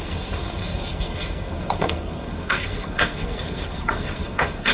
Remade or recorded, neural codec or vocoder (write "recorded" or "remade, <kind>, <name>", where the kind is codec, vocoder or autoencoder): remade, codec, SNAC